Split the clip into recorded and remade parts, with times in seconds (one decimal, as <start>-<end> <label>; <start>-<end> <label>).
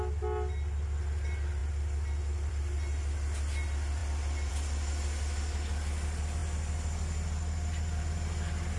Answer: 0.0-8.8 recorded